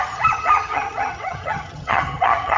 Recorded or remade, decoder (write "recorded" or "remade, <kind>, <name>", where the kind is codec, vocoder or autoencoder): remade, vocoder, HiFi-GAN